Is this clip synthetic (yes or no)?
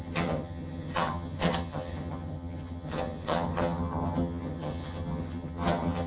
yes